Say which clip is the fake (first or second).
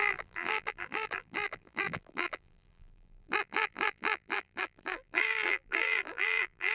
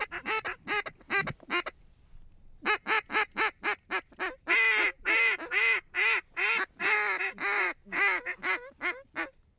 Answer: first